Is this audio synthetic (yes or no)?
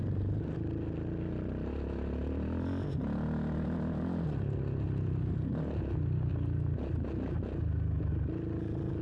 no